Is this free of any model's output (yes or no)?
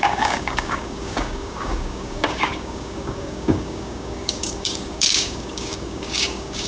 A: no